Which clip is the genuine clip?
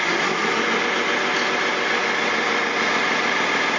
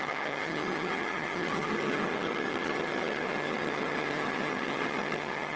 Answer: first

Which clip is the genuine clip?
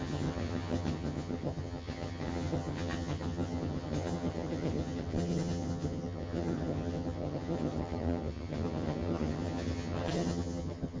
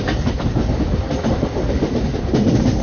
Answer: second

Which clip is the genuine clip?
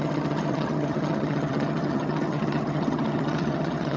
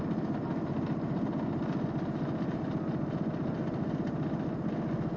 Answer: second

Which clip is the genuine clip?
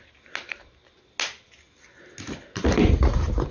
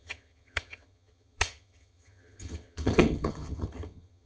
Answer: first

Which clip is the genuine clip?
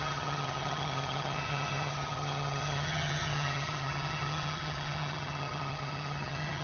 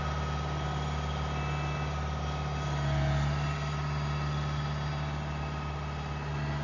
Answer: second